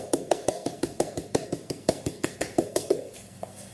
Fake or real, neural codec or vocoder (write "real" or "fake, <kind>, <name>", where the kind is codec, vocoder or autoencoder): fake, codec, SNAC